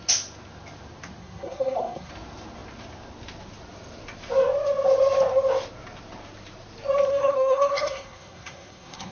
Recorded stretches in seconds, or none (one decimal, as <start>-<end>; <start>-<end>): 0.0-1.2; 2.1-7.1